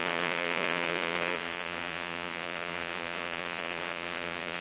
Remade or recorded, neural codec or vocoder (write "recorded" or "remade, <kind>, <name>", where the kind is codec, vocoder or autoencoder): remade, vocoder, Vocos